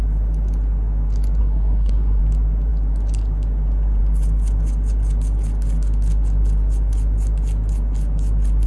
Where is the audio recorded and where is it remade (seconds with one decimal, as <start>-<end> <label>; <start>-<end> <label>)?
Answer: 0.0-1.4 recorded; 1.4-2.2 remade; 2.2-8.7 recorded